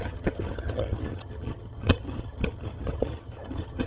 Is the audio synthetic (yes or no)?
yes